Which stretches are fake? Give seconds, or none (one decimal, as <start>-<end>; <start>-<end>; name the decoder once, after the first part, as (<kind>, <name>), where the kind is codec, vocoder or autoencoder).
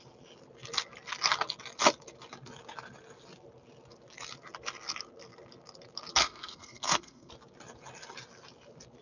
6.2-7.3 (codec, SNAC)